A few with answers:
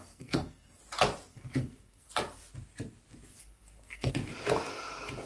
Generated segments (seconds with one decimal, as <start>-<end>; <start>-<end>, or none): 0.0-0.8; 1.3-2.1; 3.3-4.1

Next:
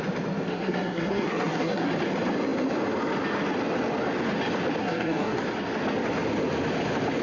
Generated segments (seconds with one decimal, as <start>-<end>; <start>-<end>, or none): 0.5-1.9; 4.8-5.4

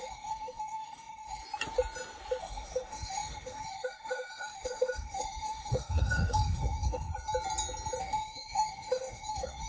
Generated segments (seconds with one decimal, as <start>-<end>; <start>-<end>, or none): 0.0-1.4; 2.4-7.1; 8.0-9.7

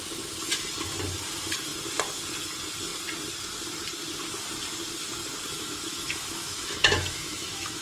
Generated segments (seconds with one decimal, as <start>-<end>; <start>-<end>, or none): 5.5-7.8